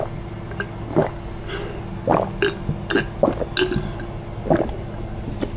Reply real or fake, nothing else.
real